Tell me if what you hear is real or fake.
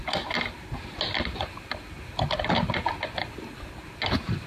real